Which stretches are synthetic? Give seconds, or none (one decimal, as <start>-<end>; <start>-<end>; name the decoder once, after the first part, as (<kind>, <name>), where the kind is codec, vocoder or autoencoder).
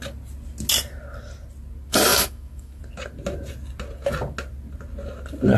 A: 2.1-2.8 (autoencoder, DAC-VAE)